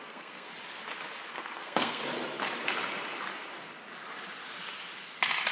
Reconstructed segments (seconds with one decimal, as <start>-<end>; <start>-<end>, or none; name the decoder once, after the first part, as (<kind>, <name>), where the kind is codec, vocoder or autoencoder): 0.0-0.5 (codec, SNAC); 1.3-2.0